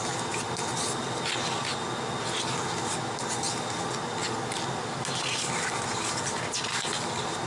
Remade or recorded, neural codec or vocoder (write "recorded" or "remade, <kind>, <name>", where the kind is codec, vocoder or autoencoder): recorded